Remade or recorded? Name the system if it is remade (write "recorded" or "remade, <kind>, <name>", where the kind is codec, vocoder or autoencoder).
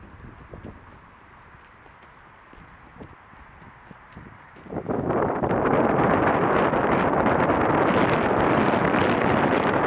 remade, vocoder, BigVGAN v2